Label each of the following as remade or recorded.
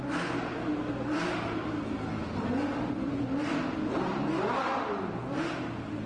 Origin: recorded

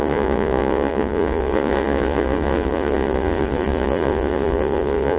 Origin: remade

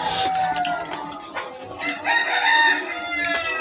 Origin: recorded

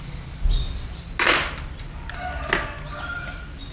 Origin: recorded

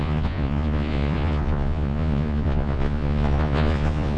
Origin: remade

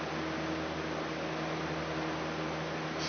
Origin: recorded